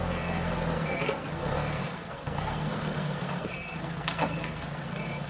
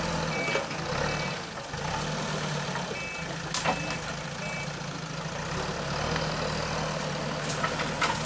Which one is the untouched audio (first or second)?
second